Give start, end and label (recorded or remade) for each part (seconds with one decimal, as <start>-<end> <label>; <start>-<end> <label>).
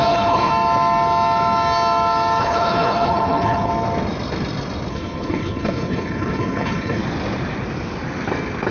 0.0-0.5 remade; 0.5-2.4 recorded; 2.4-3.7 remade; 3.7-4.9 recorded; 4.9-7.0 remade; 7.0-8.7 recorded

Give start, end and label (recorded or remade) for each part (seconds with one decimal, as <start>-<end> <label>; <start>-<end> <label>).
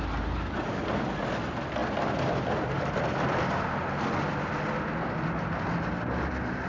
0.0-6.7 recorded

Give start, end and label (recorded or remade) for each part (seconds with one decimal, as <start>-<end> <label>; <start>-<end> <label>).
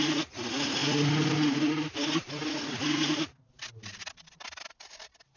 0.0-5.4 recorded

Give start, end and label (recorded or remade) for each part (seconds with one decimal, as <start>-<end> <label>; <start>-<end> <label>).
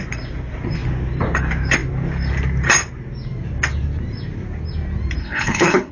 0.0-5.2 recorded; 5.2-5.9 remade